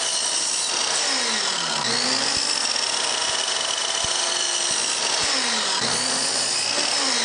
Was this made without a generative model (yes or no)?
yes